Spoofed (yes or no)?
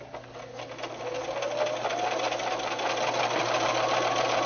no